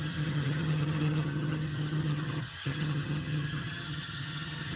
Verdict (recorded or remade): remade